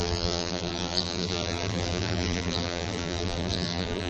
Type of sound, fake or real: fake